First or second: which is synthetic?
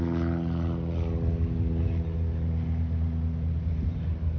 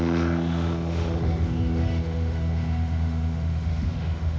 second